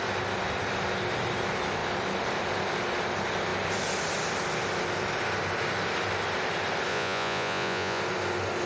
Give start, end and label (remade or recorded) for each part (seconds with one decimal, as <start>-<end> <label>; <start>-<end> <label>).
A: 0.0-6.9 recorded; 6.9-8.0 remade; 8.0-8.7 recorded